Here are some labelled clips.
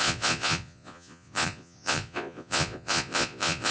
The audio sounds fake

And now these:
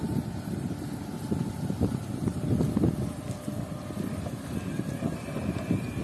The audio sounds real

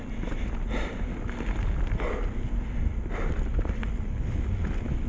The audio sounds real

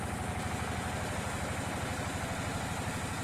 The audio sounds real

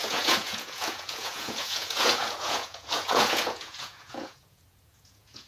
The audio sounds fake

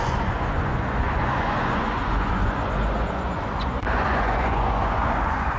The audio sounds fake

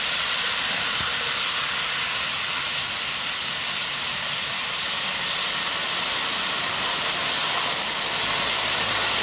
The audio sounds real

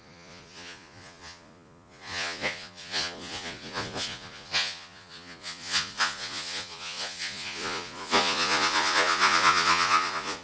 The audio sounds fake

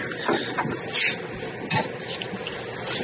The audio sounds real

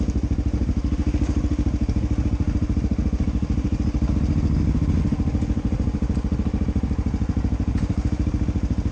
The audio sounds real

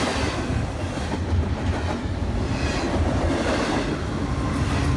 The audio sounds real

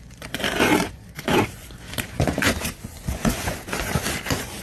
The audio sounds fake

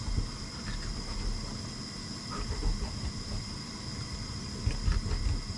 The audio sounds real